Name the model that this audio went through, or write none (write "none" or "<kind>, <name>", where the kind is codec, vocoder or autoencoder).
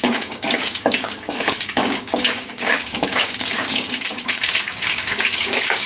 codec, DAC